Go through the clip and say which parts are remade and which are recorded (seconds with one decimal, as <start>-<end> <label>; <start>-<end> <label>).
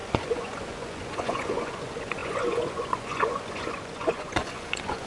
0.0-5.1 remade